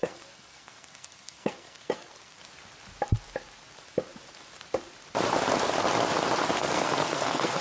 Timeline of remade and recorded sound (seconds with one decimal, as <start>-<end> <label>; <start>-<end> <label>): 0.0-2.4 remade; 2.4-6.6 recorded; 6.6-7.6 remade